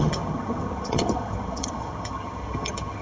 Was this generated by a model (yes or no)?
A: yes